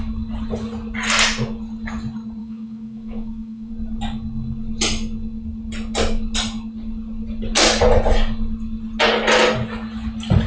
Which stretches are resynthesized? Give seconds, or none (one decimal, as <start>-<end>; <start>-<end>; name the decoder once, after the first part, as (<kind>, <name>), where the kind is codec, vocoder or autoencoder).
2.4-3.7 (autoencoder, DAC-VAE)